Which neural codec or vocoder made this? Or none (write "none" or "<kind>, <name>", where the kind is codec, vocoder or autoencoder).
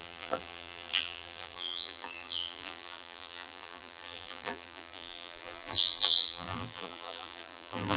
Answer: vocoder, BigVGAN v2